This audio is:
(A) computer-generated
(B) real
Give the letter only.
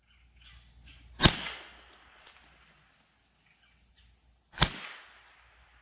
B